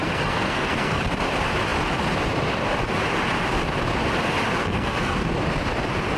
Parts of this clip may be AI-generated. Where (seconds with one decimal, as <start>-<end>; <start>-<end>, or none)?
0.0-1.0; 4.6-5.3